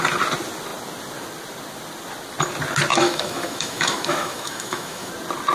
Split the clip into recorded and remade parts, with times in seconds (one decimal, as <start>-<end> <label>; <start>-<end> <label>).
0.0-2.9 recorded; 2.9-5.1 remade; 5.1-5.5 recorded